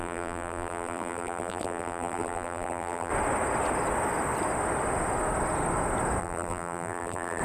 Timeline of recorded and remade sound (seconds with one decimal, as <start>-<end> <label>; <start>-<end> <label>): 0.0-3.1 remade; 3.1-6.2 recorded; 6.2-7.4 remade